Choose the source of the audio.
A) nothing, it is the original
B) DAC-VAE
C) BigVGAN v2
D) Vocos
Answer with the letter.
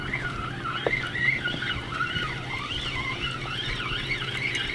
A